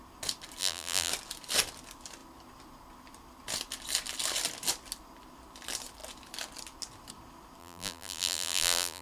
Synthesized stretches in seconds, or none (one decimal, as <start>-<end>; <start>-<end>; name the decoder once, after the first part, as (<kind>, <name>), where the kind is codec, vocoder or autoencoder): 0.6-1.1 (vocoder, BigVGAN v2); 7.6-9.0